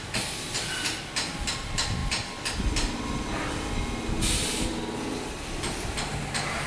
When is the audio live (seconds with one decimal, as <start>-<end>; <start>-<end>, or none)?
0.0-6.7